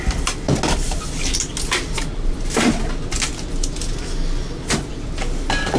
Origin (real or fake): real